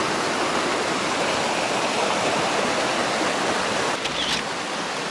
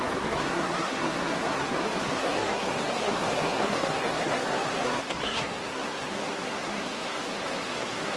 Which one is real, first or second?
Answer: first